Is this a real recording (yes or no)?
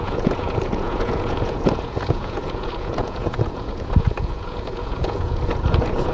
no